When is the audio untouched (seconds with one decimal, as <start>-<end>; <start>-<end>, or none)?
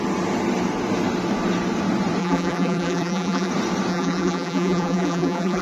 0.0-2.2; 3.5-3.9